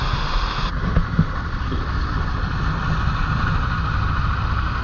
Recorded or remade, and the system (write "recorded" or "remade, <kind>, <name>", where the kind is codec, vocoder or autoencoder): recorded